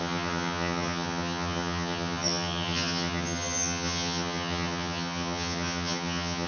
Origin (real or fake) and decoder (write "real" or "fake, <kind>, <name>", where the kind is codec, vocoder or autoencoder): fake, vocoder, HiFi-GAN